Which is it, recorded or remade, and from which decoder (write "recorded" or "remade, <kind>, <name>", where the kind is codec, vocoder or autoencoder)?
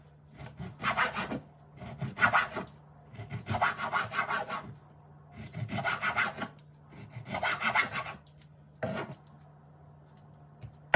recorded